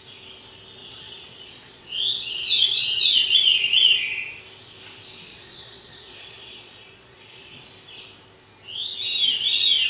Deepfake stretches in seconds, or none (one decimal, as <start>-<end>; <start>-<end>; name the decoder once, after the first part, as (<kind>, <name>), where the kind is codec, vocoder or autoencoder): 0.8-4.0 (vocoder, Vocos); 5.3-7.6